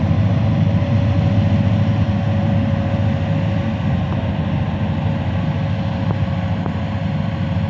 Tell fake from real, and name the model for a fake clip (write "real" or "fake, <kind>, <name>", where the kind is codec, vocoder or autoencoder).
real